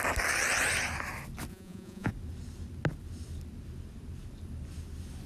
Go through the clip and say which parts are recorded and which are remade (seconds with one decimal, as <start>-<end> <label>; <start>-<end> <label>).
0.0-1.5 recorded; 1.5-2.1 remade; 2.1-5.3 recorded

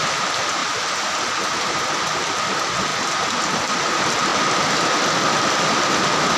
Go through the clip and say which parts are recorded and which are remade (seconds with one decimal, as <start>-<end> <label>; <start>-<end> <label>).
0.0-0.6 recorded; 0.6-1.1 remade; 1.1-6.4 recorded